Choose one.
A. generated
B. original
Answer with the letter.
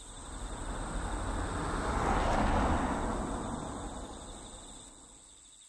B